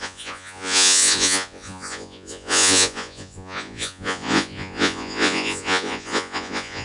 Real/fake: fake